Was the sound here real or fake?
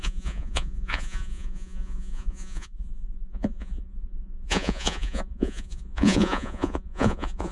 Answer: fake